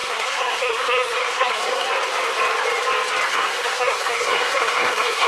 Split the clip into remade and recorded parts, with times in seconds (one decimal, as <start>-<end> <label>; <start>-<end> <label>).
0.0-1.9 remade; 1.9-3.3 recorded; 3.3-5.3 remade